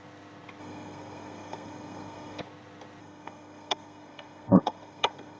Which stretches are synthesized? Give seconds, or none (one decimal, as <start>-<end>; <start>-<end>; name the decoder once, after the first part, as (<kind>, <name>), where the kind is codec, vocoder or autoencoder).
0.6-2.4 (codec, SNAC); 3.0-5.4